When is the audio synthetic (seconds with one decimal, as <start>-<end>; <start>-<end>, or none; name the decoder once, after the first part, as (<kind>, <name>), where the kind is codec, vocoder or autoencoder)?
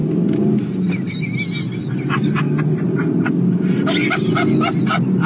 none